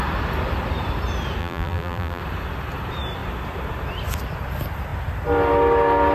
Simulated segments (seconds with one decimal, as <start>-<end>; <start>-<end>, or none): 1.4-2.2